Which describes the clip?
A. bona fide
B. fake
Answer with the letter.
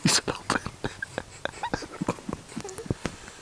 A